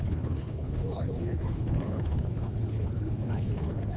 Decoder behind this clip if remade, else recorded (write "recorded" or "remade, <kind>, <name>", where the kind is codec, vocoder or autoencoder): remade, codec, HILCodec